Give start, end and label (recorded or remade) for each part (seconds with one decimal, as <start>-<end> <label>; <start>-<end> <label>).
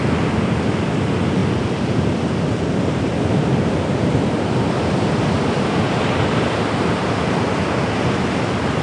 0.0-1.4 recorded; 1.4-5.9 remade; 5.9-8.8 recorded